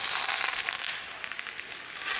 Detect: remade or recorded recorded